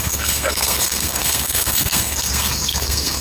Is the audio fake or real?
fake